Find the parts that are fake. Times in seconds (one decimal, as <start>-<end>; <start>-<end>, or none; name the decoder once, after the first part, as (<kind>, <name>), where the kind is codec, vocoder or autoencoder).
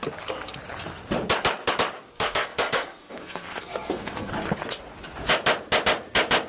2.1-4.3 (codec, SNAC)